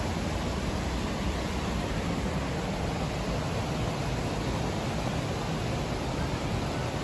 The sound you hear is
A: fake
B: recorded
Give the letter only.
B